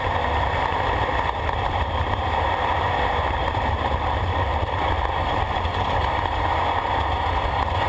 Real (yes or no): yes